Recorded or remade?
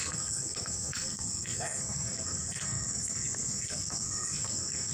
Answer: remade